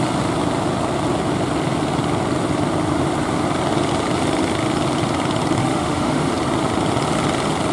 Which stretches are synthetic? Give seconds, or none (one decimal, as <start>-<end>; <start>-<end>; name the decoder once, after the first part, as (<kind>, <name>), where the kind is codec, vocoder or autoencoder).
5.6-6.3 (autoencoder, DAC-VAE)